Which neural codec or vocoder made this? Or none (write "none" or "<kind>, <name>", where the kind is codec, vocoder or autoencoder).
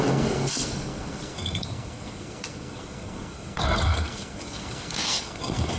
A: codec, SNAC